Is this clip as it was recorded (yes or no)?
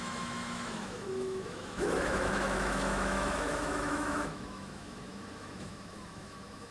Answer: no